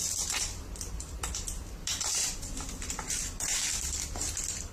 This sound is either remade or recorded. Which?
remade